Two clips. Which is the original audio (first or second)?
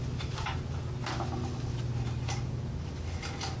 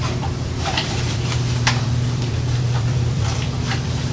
first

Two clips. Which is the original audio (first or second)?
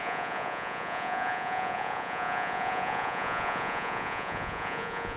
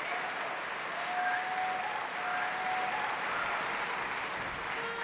second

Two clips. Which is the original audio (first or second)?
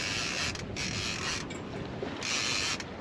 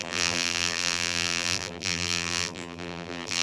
first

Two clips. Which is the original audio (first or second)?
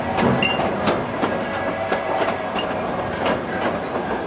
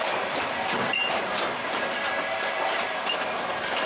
first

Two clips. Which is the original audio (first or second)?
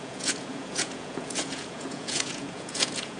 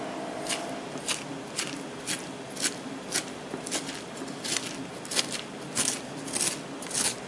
second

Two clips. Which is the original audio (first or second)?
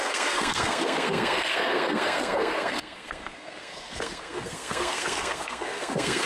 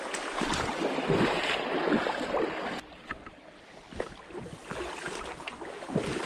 second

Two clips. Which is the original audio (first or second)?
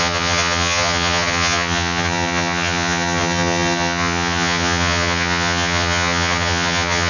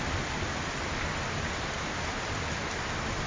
second